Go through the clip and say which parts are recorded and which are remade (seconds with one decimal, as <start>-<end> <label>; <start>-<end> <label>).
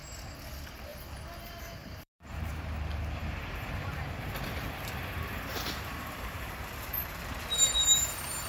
0.0-1.8 recorded; 1.8-2.5 remade; 2.5-3.2 recorded; 3.2-6.5 remade; 6.5-8.5 recorded